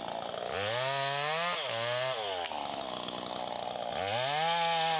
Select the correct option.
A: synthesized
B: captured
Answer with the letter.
B